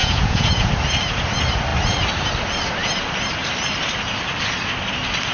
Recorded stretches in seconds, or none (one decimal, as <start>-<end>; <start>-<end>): 0.7-5.3